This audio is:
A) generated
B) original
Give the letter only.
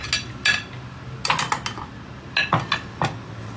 B